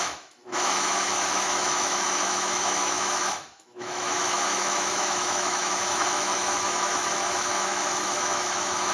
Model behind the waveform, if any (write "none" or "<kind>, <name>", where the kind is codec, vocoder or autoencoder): autoencoder, DAC-VAE